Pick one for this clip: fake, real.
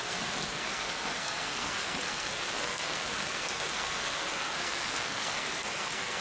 fake